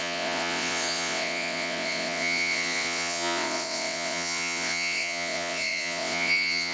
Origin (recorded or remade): remade